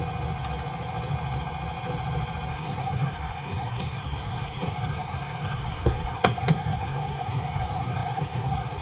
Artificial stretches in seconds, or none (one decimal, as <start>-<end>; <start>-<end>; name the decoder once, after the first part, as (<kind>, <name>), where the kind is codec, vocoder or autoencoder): 2.5-8.8 (codec, SNAC)